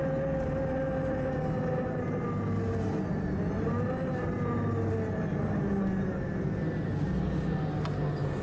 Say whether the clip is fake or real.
real